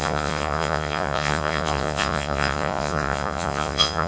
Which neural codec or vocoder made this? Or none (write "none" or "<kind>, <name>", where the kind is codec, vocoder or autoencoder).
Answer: vocoder, Vocos